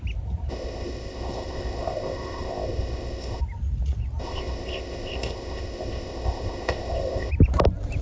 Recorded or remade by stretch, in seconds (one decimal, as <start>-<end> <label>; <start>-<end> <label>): 0.0-0.5 recorded; 0.5-3.4 remade; 3.4-4.2 recorded; 4.2-7.3 remade; 7.3-8.0 recorded